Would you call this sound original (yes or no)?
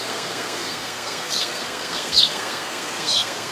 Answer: no